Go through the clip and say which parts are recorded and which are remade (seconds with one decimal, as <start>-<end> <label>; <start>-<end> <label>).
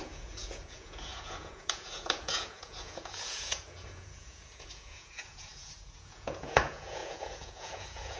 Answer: 0.0-8.2 remade